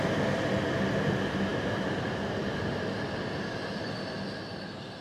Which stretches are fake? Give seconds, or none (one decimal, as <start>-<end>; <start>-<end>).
none